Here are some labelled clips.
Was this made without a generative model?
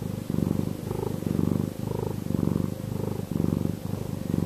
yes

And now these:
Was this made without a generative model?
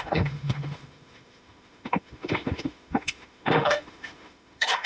no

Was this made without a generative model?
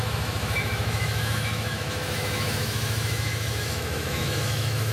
no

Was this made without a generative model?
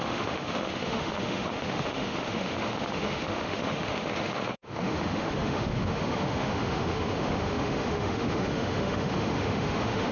no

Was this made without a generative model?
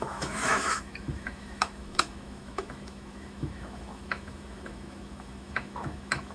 no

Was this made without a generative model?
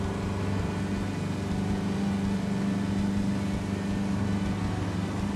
yes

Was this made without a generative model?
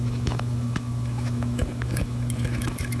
no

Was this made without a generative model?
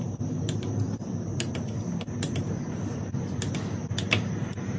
yes